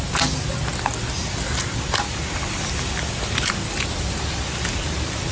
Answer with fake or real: real